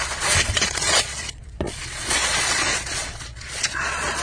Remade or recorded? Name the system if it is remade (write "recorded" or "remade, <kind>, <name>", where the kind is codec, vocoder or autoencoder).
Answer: remade, vocoder, Vocos